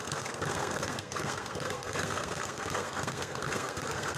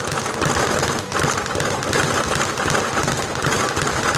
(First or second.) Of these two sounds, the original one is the second